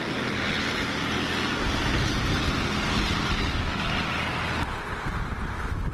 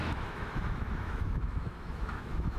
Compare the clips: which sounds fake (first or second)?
second